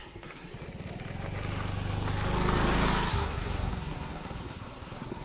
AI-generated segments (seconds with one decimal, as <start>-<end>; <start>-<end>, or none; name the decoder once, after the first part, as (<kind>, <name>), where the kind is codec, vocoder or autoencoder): 0.0-0.5 (codec, SNAC); 3.1-5.2